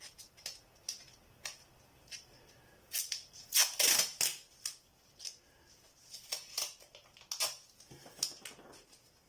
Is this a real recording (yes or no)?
yes